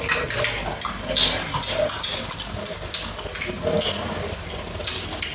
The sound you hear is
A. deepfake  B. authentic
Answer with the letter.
B